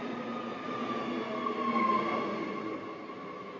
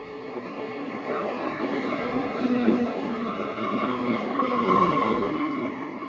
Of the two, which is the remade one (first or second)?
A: second